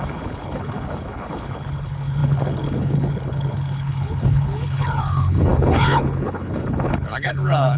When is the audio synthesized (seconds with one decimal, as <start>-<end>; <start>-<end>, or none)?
0.0-7.8